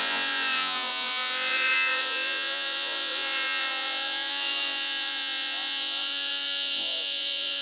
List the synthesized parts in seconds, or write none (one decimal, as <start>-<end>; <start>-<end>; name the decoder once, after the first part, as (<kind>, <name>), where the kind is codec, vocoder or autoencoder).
0.0-7.6 (vocoder, Vocos)